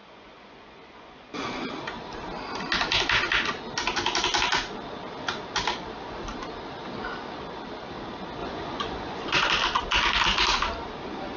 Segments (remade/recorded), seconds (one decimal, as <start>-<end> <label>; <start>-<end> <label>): 0.0-1.7 remade; 1.7-8.4 recorded; 8.4-9.5 remade; 9.5-11.4 recorded